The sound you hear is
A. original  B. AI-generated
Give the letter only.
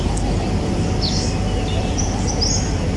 A